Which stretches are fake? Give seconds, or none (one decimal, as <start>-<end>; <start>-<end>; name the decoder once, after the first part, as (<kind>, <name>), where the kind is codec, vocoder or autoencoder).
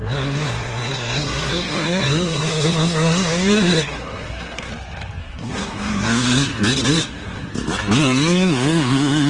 0.0-4.7 (codec, SNAC); 5.2-6.5; 7.0-7.5; 8.0-9.3